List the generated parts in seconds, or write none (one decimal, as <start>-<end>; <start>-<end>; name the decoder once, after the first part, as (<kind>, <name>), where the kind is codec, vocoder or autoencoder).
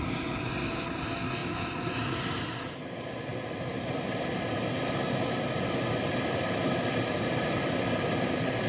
1.4-2.7 (vocoder, BigVGAN v2)